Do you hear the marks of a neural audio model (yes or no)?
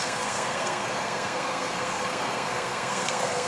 yes